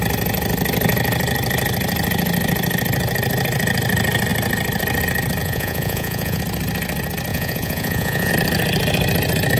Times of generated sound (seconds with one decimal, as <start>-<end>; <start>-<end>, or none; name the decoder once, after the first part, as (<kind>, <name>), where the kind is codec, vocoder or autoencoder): 5.4-6.4 (vocoder, Vocos); 7.3-8.3